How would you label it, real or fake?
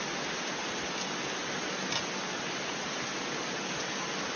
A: real